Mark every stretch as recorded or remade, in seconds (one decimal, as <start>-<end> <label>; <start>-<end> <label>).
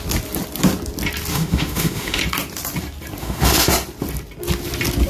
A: 0.0-1.3 recorded; 1.3-2.2 remade; 2.2-3.2 recorded; 3.2-3.7 remade; 3.7-5.1 recorded